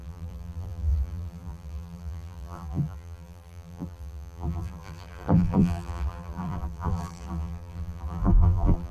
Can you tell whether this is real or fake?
fake